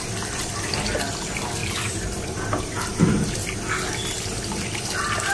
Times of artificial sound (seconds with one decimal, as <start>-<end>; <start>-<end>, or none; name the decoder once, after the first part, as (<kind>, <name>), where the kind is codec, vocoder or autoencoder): none